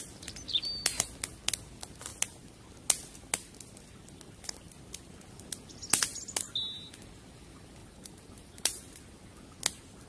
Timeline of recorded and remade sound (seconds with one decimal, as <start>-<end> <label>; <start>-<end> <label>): 0.0-7.8 recorded; 7.8-9.0 remade; 9.0-10.1 recorded